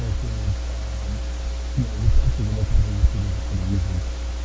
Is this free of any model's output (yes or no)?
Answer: yes